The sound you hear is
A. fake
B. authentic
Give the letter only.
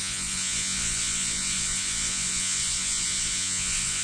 A